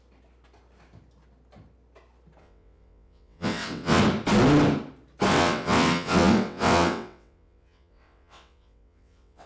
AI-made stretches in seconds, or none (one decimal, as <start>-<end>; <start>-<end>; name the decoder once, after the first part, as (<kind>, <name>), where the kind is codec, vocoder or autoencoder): 2.4-4.0 (vocoder, WaveNeXt); 5.3-9.5

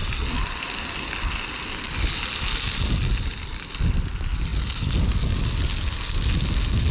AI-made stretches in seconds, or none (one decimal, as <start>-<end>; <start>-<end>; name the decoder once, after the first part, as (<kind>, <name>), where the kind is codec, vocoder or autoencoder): none

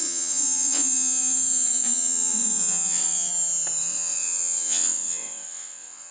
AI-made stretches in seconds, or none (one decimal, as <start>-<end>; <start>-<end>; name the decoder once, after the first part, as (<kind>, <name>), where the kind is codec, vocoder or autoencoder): 0.0-3.3 (vocoder, WaveNeXt); 3.8-6.1

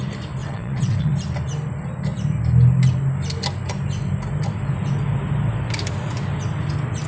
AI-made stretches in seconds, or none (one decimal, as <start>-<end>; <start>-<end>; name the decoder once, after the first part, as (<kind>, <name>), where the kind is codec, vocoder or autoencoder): 0.4-1.1 (vocoder, WaveNeXt)

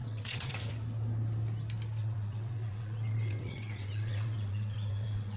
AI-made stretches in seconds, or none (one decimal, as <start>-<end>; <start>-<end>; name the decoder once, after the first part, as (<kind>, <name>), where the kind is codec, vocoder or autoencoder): 0.0-0.7 (vocoder, WaveNeXt); 2.0-5.4

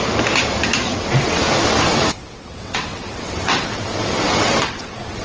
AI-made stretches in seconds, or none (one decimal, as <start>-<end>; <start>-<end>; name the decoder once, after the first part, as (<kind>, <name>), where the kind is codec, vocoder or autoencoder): 0.9-1.4 (vocoder, WaveNeXt); 1.9-5.2

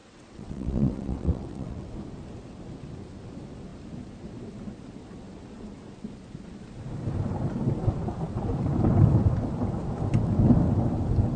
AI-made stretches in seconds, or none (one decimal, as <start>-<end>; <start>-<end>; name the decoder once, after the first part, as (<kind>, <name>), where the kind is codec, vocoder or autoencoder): 0.0-1.9 (vocoder, WaveNeXt)

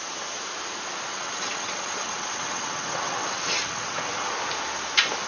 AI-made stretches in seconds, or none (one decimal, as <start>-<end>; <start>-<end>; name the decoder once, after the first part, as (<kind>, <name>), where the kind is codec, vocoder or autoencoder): 1.1-4.3 (vocoder, WaveNeXt)